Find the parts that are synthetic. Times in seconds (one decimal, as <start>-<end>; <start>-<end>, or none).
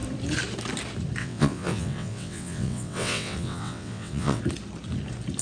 1.2-4.4